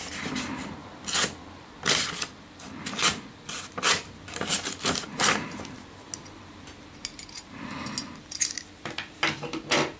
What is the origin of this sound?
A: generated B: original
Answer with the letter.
B